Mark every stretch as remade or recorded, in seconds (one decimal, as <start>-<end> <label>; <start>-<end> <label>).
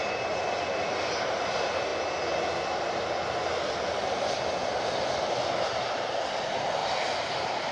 0.0-7.7 recorded